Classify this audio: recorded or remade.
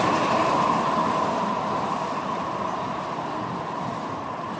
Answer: recorded